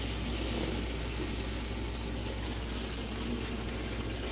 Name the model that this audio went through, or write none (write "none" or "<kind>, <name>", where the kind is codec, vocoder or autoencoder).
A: none